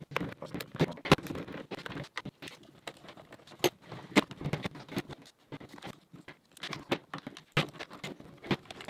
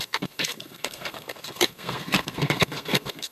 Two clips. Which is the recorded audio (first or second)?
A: first